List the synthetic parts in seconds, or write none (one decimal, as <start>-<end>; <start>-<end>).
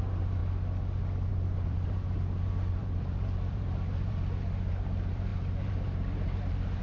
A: 0.0-0.4; 1.3-6.8